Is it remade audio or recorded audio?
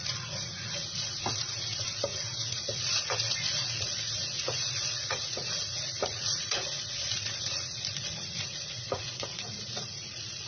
remade